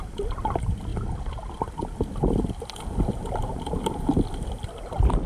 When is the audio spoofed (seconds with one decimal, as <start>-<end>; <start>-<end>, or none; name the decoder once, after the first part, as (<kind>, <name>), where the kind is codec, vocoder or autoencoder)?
none